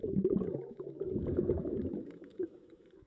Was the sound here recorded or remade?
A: remade